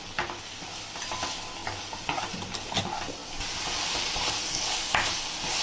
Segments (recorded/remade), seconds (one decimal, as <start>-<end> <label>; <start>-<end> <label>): 0.0-5.6 recorded